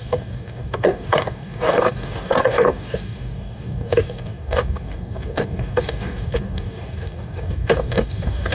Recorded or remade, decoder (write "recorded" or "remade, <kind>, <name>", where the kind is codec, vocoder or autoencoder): remade, codec, DAC